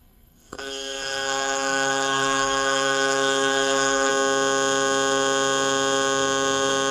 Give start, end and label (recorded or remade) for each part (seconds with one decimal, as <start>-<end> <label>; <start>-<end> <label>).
0.0-4.1 remade; 4.1-6.9 recorded